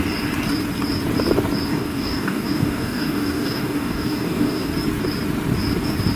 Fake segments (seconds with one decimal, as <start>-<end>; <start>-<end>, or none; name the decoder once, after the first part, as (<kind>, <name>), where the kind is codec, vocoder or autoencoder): 1.7-4.7 (codec, DAC)